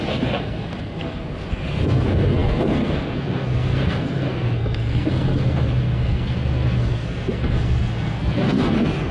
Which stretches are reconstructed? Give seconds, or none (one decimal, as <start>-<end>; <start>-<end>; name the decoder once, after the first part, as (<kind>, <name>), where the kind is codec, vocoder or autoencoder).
0.0-9.1 (codec, SNAC)